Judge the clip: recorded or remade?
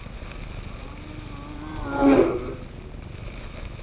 recorded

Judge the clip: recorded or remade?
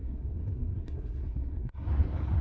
remade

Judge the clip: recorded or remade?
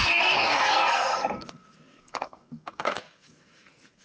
remade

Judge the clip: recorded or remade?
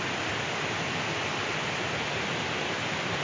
recorded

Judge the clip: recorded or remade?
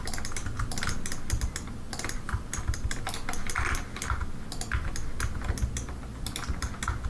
recorded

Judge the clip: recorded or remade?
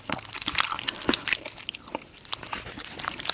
recorded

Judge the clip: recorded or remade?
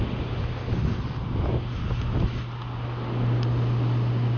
recorded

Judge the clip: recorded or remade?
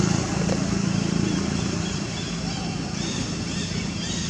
recorded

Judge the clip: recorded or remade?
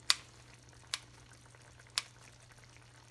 recorded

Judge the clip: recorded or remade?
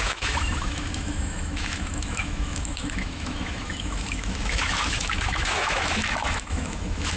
remade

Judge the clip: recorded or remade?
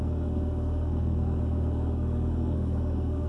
remade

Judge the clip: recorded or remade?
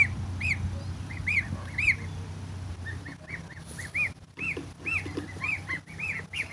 recorded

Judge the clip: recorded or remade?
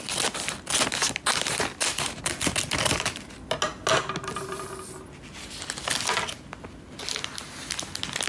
recorded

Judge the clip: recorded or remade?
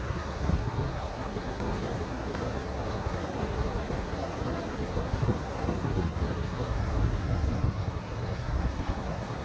remade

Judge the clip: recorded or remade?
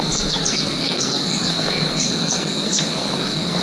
remade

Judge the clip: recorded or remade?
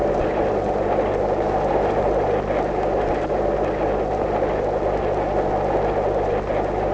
recorded